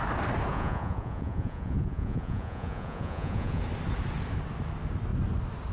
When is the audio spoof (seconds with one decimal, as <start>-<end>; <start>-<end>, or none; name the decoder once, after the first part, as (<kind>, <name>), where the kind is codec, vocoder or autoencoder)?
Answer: 0.5-3.6 (vocoder, Vocos)